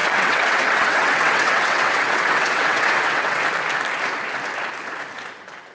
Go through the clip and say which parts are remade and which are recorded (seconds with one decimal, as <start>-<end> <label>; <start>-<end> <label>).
0.0-3.4 remade; 3.4-5.7 recorded